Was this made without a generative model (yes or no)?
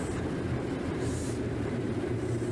no